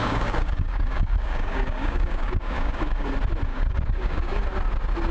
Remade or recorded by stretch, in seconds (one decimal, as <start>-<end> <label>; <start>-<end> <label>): 0.0-3.1 remade; 3.1-3.5 recorded; 3.5-4.4 remade; 4.4-5.1 recorded